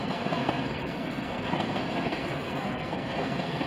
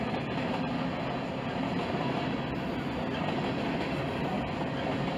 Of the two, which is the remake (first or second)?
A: first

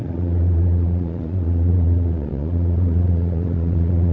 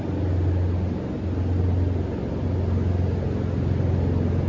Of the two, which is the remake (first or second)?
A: first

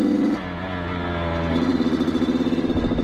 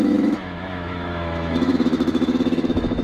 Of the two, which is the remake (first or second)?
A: second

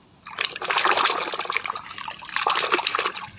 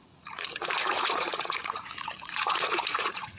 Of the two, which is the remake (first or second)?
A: second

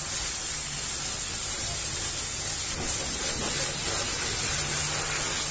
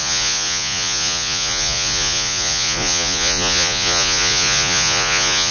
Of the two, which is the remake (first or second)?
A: second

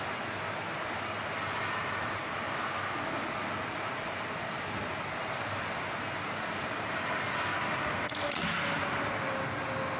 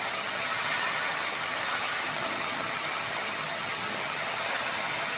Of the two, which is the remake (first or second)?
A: second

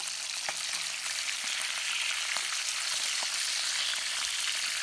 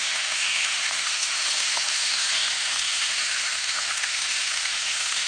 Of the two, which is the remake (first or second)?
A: second